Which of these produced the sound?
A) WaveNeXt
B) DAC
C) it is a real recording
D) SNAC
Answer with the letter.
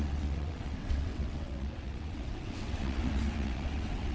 A